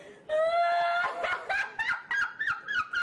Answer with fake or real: real